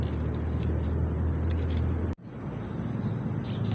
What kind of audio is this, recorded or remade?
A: recorded